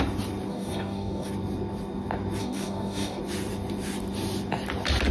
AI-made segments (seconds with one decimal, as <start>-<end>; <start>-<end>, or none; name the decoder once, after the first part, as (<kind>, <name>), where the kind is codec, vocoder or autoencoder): 0.5-1.3 (codec, DAC); 2.4-3.2